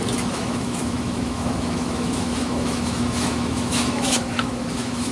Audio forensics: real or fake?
fake